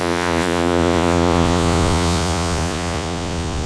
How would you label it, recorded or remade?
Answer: remade